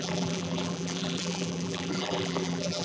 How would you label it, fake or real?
fake